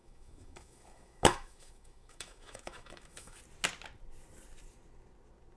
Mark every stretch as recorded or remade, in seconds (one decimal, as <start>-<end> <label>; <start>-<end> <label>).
0.0-3.4 remade; 3.4-5.6 recorded